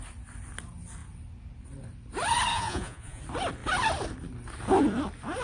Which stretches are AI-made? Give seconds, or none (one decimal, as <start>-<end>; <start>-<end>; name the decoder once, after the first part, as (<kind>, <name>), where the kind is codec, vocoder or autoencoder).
2.5-3.2 (vocoder, Vocos)

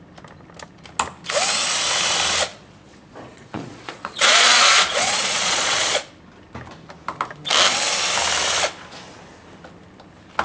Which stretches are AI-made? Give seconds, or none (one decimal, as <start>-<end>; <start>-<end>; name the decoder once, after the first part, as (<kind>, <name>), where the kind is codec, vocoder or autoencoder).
2.5-6.1 (vocoder, Vocos)

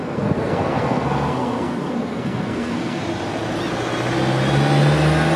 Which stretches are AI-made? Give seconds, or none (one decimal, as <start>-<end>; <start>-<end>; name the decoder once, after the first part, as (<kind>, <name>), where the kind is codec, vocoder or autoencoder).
0.0-3.0 (codec, SNAC)

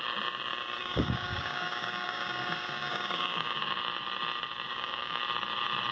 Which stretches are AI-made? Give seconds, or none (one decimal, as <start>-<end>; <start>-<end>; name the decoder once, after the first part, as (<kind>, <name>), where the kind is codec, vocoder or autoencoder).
0.8-3.8 (codec, DAC); 4.7-5.2